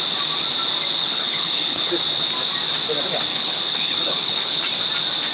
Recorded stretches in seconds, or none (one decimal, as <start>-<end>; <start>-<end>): 0.0-1.0; 1.9-3.3; 4.6-5.3